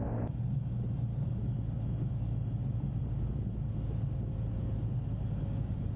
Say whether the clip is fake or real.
real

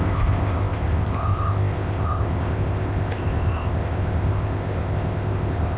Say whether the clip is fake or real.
fake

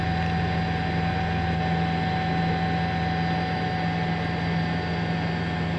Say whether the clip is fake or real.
real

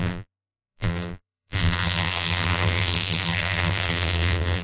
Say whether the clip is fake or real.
fake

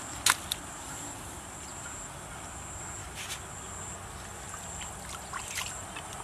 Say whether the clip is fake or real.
real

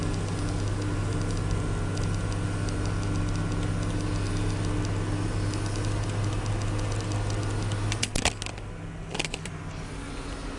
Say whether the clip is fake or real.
real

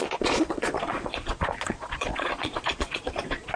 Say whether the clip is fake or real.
fake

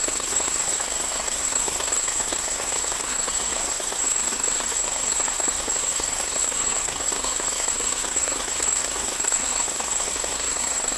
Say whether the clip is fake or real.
fake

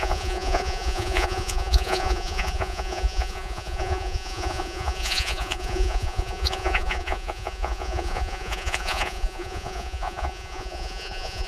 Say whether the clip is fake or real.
fake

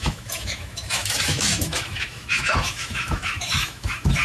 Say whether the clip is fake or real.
fake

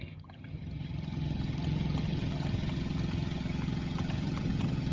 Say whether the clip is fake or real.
fake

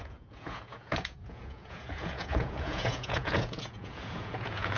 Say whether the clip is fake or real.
fake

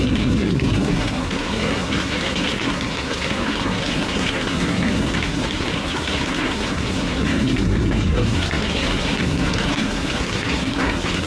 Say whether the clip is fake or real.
fake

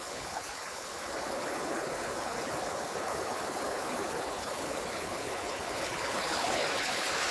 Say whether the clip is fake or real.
fake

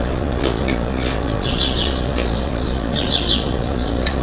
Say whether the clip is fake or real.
fake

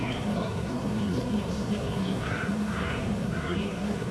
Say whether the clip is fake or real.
fake